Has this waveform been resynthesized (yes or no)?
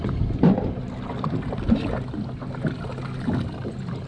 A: no